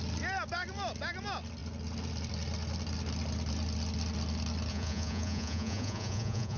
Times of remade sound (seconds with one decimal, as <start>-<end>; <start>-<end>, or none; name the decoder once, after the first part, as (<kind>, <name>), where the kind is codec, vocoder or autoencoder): 4.7-6.6 (vocoder, Vocos)